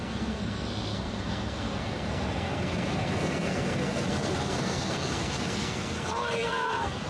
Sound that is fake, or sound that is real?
fake